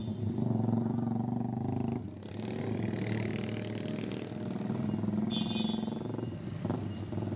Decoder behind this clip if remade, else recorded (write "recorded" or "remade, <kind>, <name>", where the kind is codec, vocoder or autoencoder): recorded